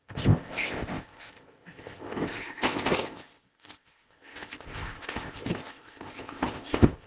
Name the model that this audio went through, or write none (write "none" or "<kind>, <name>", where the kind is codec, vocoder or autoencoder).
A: codec, ZipCodec